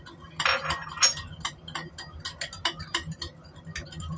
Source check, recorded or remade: recorded